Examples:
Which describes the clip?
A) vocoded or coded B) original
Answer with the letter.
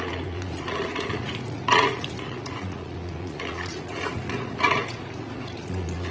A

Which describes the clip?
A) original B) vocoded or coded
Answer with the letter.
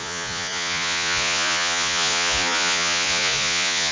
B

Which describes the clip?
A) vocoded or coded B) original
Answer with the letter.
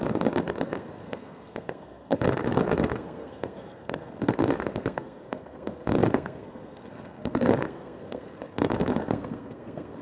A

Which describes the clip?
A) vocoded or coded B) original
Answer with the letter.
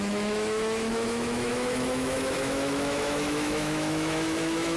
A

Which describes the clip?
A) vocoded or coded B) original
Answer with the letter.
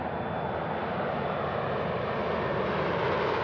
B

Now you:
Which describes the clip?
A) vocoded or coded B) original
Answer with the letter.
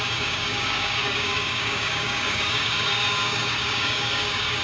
A